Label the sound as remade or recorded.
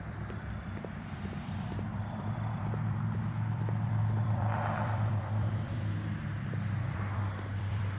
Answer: remade